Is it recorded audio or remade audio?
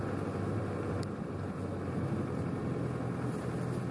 recorded